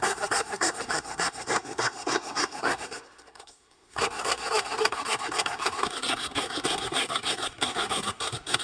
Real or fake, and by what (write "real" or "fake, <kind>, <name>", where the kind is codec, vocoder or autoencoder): fake, codec, SNAC